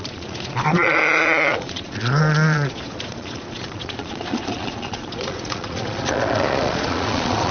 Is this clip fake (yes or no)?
yes